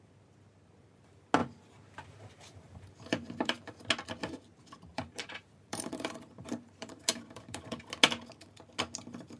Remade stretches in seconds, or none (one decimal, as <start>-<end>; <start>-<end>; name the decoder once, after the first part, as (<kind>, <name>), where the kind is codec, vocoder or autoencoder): 1.4-3.9 (vocoder, BigVGAN v2); 4.9-7.8